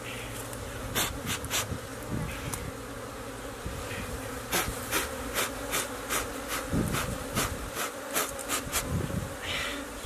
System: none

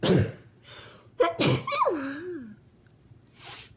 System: none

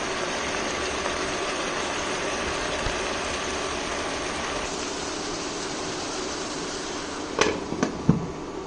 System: vocoder, BigVGAN v2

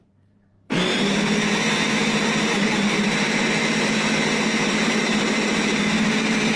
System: vocoder, BigVGAN v2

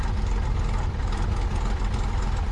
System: none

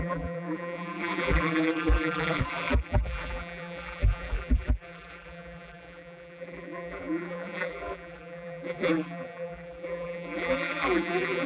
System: vocoder, BigVGAN v2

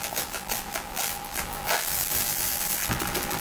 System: vocoder, BigVGAN v2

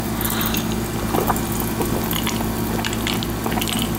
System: none